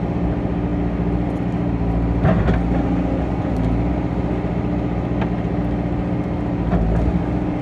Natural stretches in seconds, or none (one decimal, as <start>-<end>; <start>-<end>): 0.0-7.6